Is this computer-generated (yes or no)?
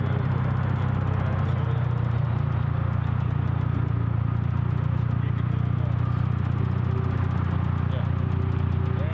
no